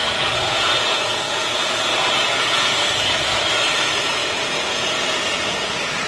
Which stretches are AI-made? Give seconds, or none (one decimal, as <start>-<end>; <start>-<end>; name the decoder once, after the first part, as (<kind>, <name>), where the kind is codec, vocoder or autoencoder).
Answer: 0.0-3.1 (vocoder, Vocos); 4.2-6.1